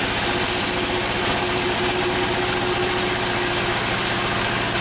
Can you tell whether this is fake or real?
real